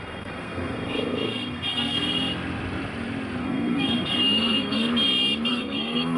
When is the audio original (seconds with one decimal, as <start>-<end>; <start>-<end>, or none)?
2.1-3.4; 4.9-5.5